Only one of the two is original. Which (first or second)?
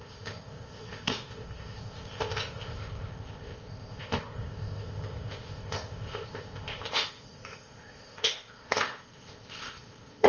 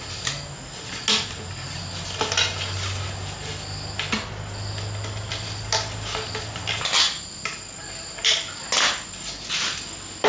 second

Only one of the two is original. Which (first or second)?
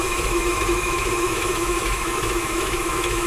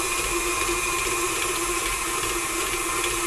second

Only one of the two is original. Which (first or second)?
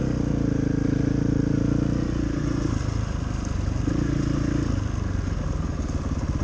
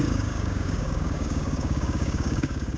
first